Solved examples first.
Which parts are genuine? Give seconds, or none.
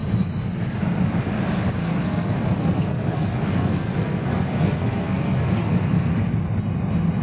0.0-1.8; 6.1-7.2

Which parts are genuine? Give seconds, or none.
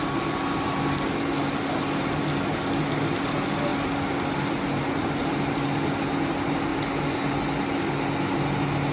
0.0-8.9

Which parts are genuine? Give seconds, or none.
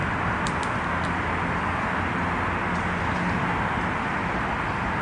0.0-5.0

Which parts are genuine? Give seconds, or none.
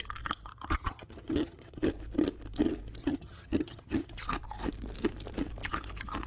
0.0-0.5; 1.9-3.0; 4.1-6.3